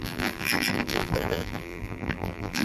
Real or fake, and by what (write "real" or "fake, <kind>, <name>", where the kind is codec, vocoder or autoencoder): fake, vocoder, BigVGAN v2